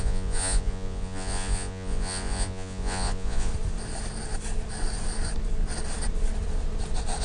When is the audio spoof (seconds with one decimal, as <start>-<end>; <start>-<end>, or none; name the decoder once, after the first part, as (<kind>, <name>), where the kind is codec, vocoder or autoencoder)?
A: 0.0-3.5 (vocoder, Vocos)